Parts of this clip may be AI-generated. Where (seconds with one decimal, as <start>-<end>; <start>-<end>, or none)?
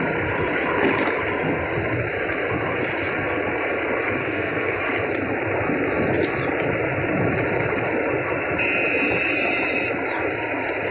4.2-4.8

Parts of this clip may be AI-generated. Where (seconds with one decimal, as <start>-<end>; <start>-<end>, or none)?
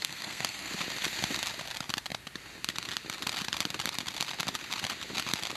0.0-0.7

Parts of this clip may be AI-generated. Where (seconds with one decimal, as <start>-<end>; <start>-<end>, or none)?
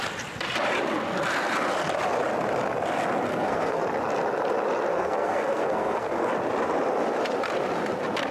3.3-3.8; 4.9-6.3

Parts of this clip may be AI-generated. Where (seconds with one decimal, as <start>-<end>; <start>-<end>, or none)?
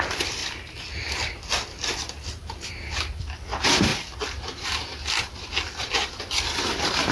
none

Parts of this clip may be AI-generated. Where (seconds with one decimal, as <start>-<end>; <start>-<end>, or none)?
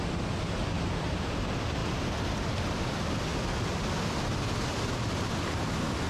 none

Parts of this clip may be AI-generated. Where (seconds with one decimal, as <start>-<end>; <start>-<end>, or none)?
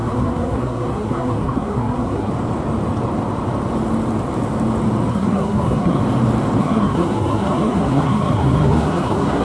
0.0-2.3; 5.1-6.0; 6.6-9.4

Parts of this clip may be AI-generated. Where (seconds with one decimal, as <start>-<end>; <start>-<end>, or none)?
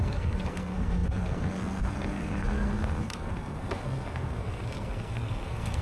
0.0-5.8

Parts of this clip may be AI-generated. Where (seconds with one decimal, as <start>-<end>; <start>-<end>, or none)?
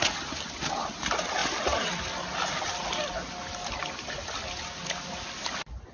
none